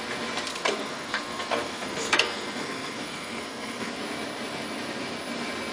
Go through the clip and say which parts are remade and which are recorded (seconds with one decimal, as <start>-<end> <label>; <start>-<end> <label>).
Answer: 0.0-0.5 recorded; 0.5-3.9 remade; 3.9-5.7 recorded